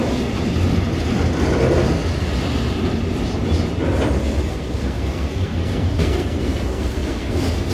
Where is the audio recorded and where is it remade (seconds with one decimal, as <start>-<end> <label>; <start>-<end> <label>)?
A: 0.0-4.2 recorded; 4.2-7.7 remade